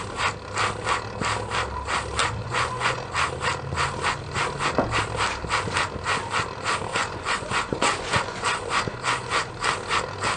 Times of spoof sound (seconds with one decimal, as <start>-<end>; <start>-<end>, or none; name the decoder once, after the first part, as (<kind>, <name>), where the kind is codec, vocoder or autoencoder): 2.2-3.1 (vocoder, Vocos); 6.9-9.5